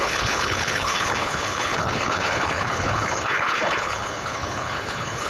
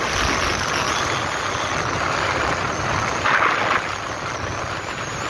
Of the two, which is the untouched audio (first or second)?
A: second